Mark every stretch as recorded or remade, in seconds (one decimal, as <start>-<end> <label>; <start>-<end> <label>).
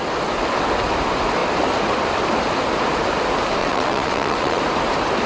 0.0-3.6 recorded; 3.6-4.6 remade; 4.6-5.3 recorded